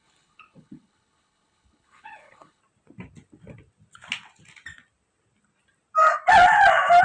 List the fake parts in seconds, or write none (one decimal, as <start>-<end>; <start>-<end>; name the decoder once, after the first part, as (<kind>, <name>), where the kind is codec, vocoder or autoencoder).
0.0-2.6 (codec, HILCodec)